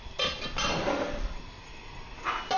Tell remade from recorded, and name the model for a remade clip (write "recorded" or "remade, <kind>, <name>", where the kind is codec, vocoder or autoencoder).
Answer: recorded